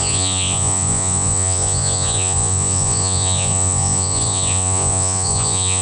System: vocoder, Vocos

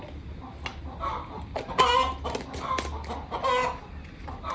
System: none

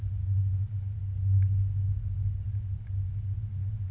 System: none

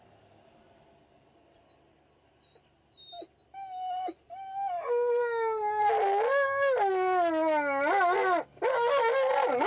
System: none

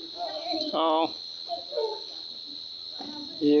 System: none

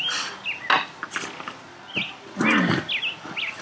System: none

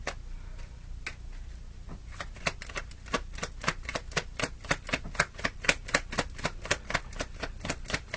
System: none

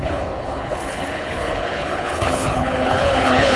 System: codec, HILCodec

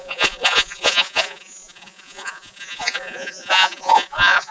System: vocoder, Vocos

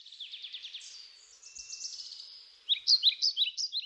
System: none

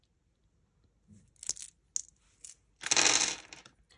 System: none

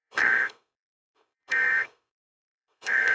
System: codec, SNAC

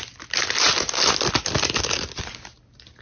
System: none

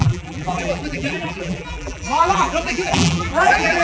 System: vocoder, BigVGAN v2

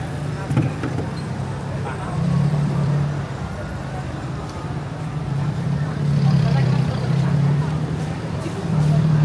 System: vocoder, BigVGAN v2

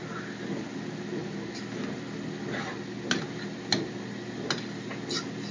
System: none